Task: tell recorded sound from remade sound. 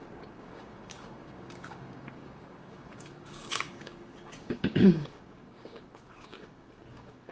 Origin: remade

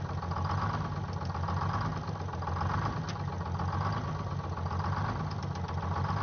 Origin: recorded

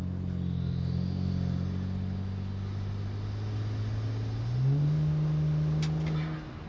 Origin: recorded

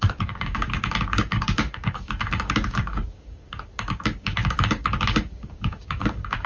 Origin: remade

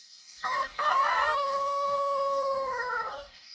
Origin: remade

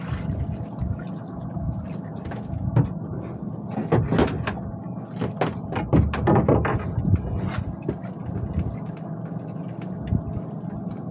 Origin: recorded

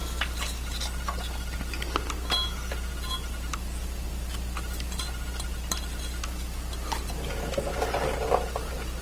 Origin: recorded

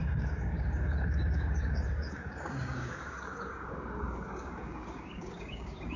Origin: remade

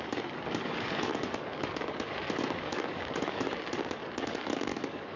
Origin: remade